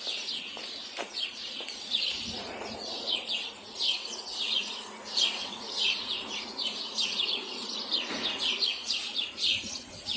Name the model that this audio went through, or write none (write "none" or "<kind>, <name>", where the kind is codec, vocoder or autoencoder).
vocoder, Vocos